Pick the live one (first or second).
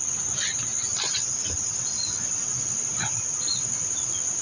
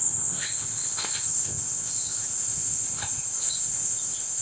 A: first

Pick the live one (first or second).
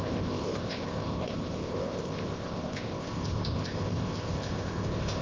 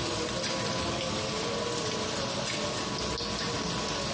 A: second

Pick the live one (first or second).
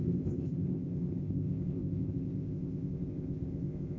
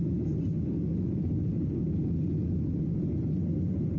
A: second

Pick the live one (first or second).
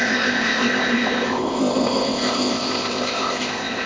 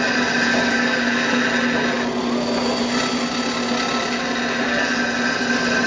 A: second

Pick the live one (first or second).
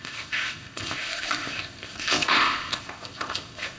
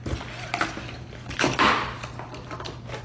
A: second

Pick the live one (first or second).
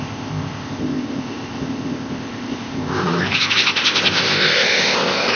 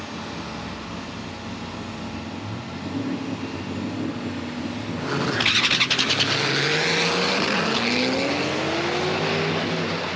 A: second